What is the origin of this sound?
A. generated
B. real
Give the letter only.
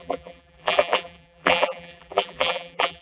A